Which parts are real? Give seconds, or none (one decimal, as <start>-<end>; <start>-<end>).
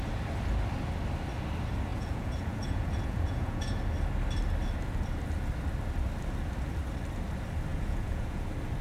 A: 0.0-1.9; 3.8-7.7; 8.4-8.8